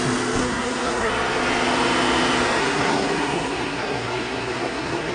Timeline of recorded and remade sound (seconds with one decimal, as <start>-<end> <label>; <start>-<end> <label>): 0.0-0.4 recorded; 0.4-1.1 remade; 1.1-2.6 recorded; 2.6-5.1 remade

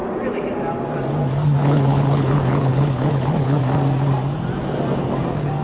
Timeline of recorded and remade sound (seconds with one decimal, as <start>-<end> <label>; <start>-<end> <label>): 0.0-1.6 recorded; 1.6-3.6 remade; 3.6-5.6 recorded

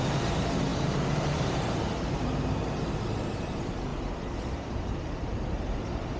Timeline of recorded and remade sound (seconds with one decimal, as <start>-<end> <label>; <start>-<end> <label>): 0.0-3.9 remade; 3.9-4.5 recorded; 4.5-6.2 remade

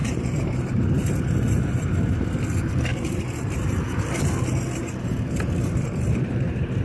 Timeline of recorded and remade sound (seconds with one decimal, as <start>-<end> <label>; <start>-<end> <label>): 0.0-1.0 remade; 1.0-2.9 recorded; 2.9-4.1 remade; 4.1-4.8 recorded; 4.8-6.8 remade